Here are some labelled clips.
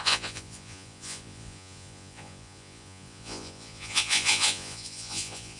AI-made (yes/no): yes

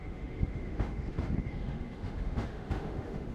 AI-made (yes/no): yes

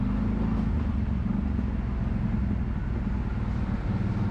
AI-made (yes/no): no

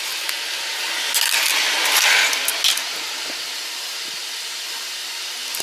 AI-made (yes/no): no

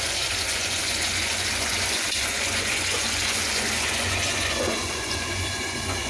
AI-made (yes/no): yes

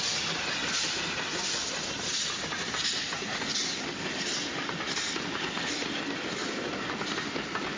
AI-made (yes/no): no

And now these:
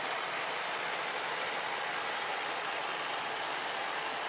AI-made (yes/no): no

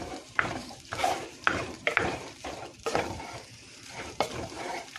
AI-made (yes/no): yes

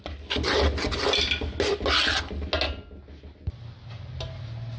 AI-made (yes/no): no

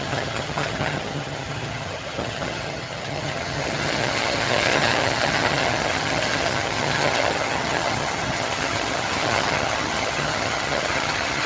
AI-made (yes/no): yes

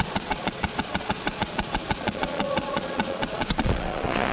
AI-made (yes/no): yes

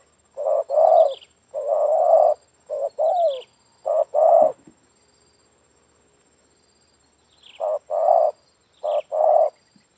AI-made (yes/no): no